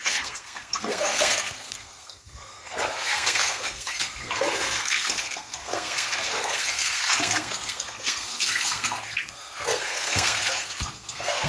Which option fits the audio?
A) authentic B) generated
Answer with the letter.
B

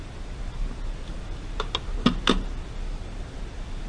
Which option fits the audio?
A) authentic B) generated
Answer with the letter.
A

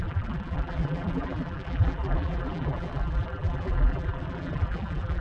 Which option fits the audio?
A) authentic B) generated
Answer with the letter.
B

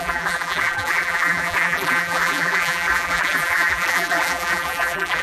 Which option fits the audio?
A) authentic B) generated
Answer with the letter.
B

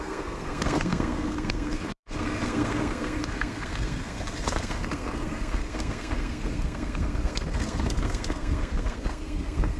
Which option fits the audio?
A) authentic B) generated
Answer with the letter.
B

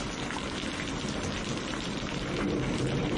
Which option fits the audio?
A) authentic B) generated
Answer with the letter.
A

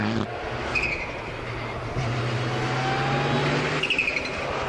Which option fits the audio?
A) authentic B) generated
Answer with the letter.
A